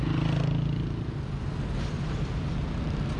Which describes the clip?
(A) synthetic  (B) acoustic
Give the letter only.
B